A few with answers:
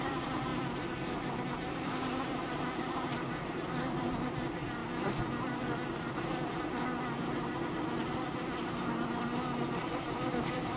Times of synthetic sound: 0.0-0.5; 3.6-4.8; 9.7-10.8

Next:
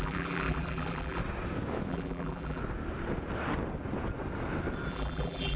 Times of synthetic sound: 0.0-1.2; 1.9-2.6; 4.9-5.6